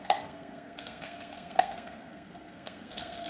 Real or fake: fake